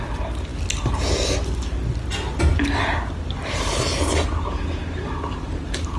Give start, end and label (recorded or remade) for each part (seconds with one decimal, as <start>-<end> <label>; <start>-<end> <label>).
0.0-0.5 remade; 0.5-4.1 recorded; 4.1-4.8 remade; 4.8-5.4 recorded; 5.4-6.0 remade